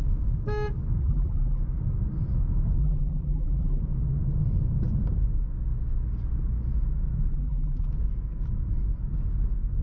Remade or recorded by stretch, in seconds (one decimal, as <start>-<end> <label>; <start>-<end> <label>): 0.0-1.0 recorded; 1.0-1.6 remade; 1.6-2.8 recorded; 2.8-3.8 remade; 3.8-7.3 recorded; 7.3-7.9 remade; 7.9-9.8 recorded